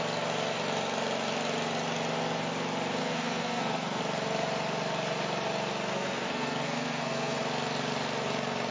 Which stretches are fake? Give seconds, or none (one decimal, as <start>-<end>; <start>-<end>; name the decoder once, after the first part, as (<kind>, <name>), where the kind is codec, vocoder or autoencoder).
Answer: 3.0-4.0 (codec, SNAC); 5.9-7.4